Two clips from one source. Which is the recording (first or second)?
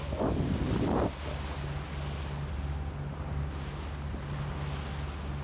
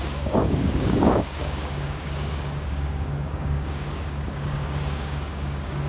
first